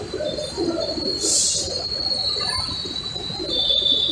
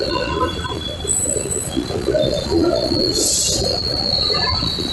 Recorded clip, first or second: first